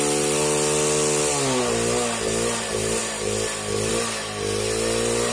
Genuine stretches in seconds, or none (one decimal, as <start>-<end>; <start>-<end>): 0.0-5.3